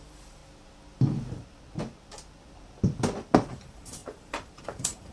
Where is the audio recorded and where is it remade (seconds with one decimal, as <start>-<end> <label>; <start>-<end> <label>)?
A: 0.0-0.4 remade; 0.4-3.5 recorded; 3.5-5.1 remade